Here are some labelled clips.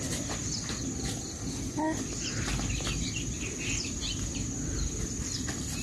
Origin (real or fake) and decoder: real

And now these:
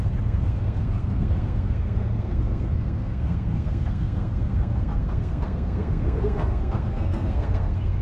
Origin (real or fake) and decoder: fake, codec, SNAC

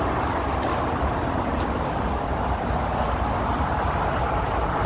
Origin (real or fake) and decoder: real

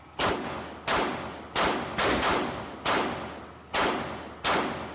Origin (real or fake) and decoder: real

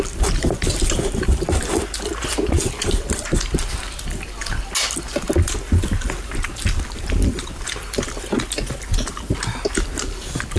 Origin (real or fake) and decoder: real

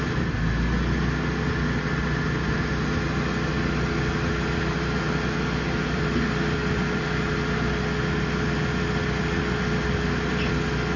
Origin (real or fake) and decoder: real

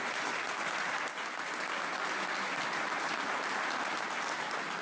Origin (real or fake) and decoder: real